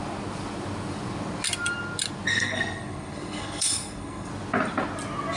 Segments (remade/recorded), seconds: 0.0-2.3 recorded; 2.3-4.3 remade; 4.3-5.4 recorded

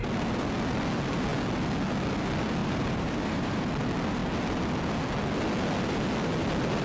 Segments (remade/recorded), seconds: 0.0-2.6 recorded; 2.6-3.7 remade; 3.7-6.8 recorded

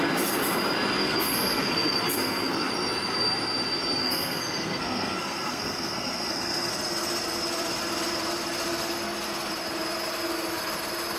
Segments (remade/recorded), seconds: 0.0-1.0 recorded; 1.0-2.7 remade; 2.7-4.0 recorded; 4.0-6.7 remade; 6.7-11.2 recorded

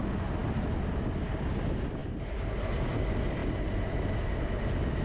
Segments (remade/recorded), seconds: 0.0-5.0 recorded

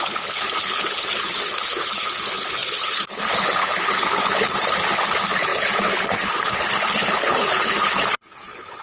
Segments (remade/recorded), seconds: 0.0-8.8 remade